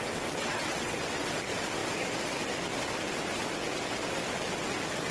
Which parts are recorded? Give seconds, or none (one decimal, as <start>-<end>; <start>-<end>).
1.3-5.1